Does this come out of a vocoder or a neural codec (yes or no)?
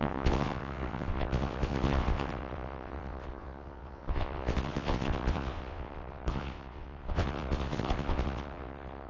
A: yes